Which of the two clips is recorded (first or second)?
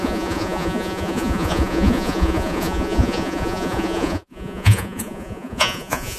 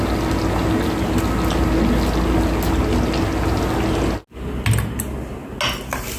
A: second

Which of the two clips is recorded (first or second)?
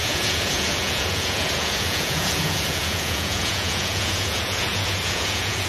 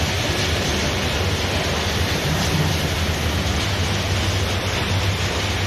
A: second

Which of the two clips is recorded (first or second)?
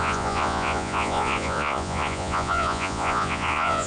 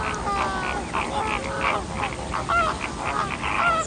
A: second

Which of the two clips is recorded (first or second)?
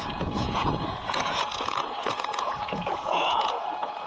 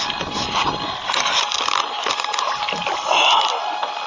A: second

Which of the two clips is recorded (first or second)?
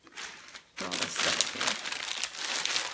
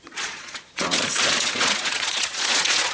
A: first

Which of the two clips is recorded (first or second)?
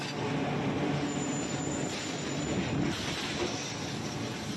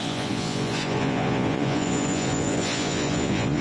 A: first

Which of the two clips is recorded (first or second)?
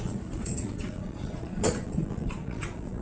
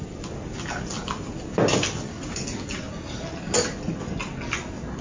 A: second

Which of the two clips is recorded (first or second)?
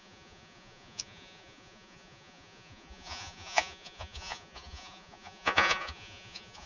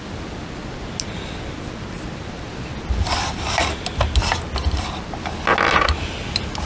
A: second